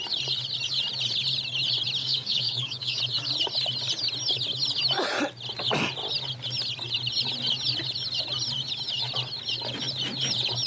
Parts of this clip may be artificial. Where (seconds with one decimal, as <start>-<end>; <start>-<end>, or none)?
2.0-3.0